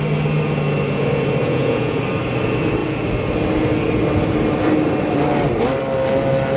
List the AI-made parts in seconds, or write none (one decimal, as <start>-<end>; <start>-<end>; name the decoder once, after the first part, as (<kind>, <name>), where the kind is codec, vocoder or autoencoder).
1.4-2.0 (vocoder, Vocos)